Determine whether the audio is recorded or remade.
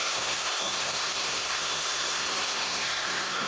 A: remade